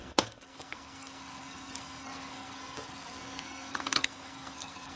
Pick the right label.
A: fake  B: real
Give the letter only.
A